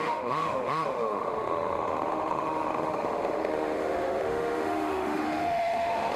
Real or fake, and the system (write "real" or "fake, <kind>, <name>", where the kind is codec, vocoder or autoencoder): fake, autoencoder, DAC-VAE